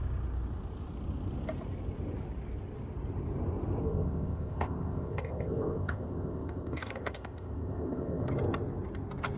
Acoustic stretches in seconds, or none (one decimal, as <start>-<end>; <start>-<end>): 0.0-3.8; 8.3-9.4

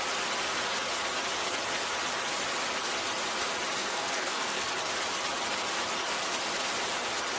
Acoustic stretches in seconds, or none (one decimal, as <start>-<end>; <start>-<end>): 0.0-3.8; 4.7-7.4

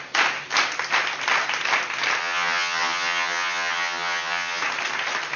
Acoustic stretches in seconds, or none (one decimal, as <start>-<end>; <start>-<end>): 0.0-2.2; 4.6-5.4

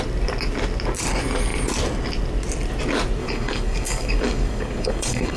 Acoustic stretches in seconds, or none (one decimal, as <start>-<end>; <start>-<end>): 0.0-3.2

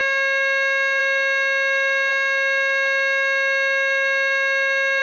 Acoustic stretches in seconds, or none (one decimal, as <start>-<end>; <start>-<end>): 1.0-2.1

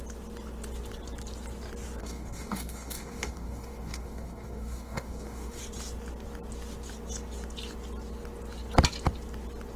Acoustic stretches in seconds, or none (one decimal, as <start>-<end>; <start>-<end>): 0.0-2.0; 5.6-9.8

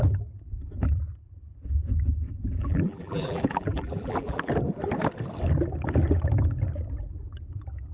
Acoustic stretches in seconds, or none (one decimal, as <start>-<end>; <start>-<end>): 0.0-2.6; 4.5-7.9

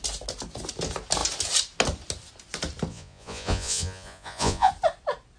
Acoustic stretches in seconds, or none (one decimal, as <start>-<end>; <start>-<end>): 0.0-2.9; 4.7-5.4